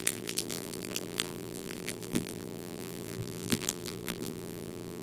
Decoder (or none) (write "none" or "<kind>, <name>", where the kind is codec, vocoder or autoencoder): vocoder, BigVGAN v2